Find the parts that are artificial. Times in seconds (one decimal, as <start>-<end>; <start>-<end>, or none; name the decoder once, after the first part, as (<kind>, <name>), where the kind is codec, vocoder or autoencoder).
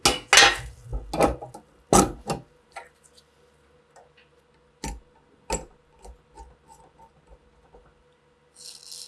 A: none